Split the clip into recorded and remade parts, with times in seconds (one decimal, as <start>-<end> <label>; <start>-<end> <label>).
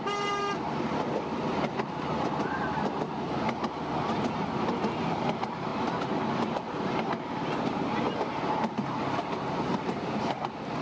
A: 0.0-10.8 recorded